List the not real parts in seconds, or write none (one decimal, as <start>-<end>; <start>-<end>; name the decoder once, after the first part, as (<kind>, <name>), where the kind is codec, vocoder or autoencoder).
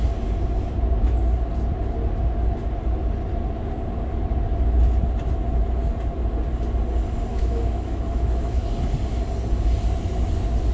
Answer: 7.3-8.6 (autoencoder, DAC-VAE)